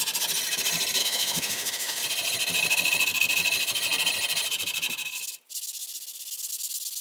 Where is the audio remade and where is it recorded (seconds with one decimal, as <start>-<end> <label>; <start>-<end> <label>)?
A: 0.0-1.0 recorded; 1.0-2.0 remade; 2.0-7.0 recorded